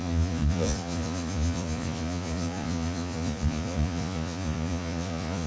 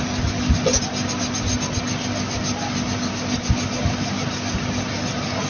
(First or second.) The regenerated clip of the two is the first